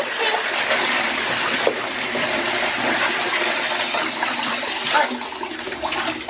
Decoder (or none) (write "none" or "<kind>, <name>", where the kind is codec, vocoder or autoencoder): none